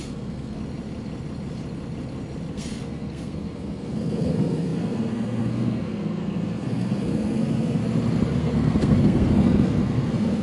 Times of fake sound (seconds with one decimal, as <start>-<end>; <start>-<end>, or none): 0.0-0.6; 2.5-7.8; 8.4-10.4